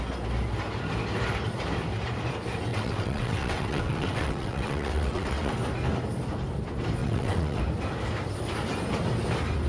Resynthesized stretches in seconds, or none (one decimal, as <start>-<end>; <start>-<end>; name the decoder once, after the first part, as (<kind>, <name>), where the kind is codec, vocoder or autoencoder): 2.7-5.5 (vocoder, WaveNeXt); 7.0-7.6

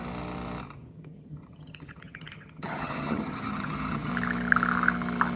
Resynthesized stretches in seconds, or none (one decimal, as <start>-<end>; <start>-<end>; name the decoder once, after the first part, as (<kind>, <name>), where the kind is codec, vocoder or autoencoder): 0.9-4.1 (vocoder, HiFi-GAN)

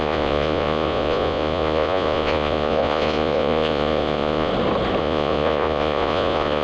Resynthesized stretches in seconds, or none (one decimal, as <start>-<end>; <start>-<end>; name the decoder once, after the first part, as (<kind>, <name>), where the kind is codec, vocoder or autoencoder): 0.0-4.5 (vocoder, Vocos); 5.0-6.6

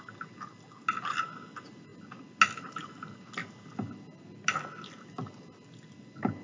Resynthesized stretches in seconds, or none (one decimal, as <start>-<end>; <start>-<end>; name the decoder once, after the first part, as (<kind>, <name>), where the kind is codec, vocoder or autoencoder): none

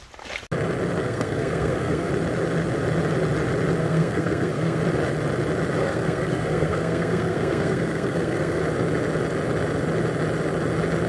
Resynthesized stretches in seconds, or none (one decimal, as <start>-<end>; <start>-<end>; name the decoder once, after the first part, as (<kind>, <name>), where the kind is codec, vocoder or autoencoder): 1.0-2.1 (codec, SNAC); 3.8-4.8; 5.8-8.6